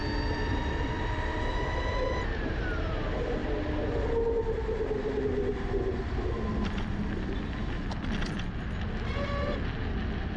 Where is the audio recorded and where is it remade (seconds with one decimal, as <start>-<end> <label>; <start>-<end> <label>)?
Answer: 0.0-10.4 recorded